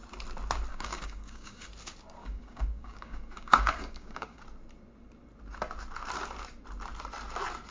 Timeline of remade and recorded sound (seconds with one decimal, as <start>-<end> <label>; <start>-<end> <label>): 0.0-0.7 recorded; 0.7-1.7 remade; 1.7-2.2 recorded; 2.2-4.4 remade; 4.4-7.7 recorded